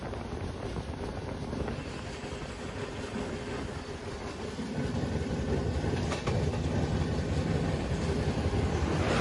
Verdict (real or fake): real